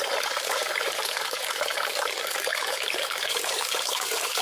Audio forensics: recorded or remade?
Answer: remade